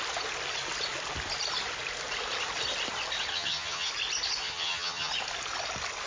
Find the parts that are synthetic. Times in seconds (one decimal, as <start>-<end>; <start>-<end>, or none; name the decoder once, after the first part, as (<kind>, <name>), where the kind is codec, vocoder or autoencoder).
3.3-3.9 (vocoder, HiFi-GAN); 4.4-5.1